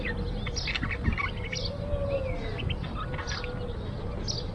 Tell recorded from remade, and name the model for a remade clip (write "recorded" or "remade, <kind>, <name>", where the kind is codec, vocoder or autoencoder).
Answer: recorded